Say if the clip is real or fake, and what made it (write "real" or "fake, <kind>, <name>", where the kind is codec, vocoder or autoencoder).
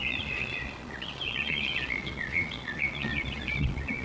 fake, vocoder, Vocos